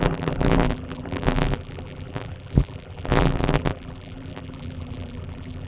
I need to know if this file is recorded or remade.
remade